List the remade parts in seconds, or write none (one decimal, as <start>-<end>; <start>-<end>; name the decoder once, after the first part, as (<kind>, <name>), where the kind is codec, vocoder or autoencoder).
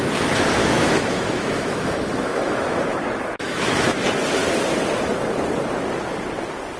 0.6-4.0 (autoencoder, DAC-VAE)